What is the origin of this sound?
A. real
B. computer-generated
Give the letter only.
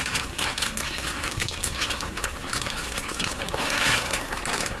B